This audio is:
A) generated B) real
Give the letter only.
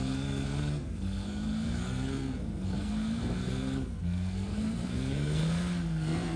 A